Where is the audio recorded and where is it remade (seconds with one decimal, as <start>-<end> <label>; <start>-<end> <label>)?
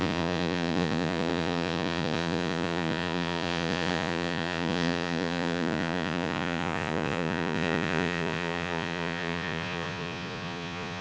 0.0-11.0 remade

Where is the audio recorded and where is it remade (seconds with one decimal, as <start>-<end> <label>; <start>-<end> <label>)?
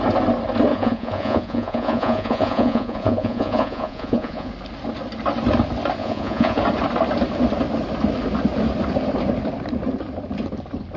0.0-0.7 recorded; 0.7-4.5 remade; 4.5-6.0 recorded; 6.0-6.6 remade; 6.6-11.0 recorded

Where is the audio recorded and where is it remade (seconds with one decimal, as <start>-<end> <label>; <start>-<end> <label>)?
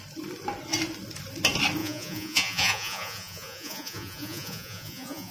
0.0-1.8 recorded; 1.8-5.3 remade